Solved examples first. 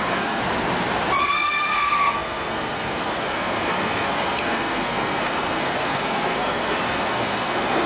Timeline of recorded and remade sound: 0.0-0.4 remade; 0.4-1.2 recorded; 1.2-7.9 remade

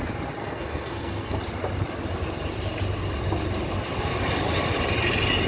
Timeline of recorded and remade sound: 0.0-0.4 recorded; 0.4-1.4 remade; 1.4-5.5 recorded

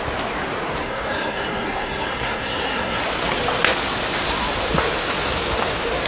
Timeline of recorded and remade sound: 0.0-0.8 recorded; 0.8-3.0 remade; 3.0-6.1 recorded

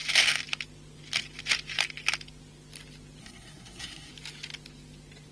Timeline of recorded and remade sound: 0.0-3.2 recorded; 3.2-4.1 remade; 4.1-5.3 recorded

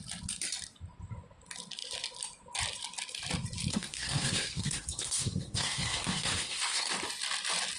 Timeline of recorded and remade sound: 0.0-3.7 recorded; 3.7-6.9 remade; 6.9-7.8 recorded

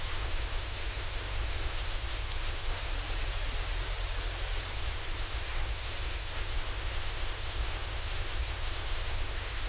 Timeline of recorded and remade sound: 0.0-2.9 remade; 2.9-4.7 recorded; 4.7-9.7 remade

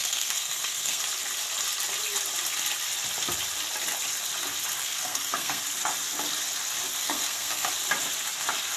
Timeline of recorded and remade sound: 0.0-1.0 remade; 1.0-4.8 recorded; 4.8-5.6 remade; 5.6-7.0 recorded; 7.0-7.7 remade; 7.7-8.8 recorded